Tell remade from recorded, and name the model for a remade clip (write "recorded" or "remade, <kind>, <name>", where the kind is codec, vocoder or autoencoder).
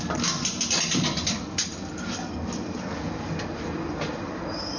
recorded